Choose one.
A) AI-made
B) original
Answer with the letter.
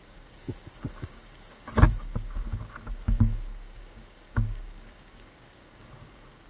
A